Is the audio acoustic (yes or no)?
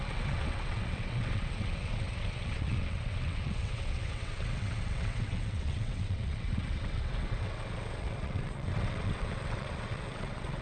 no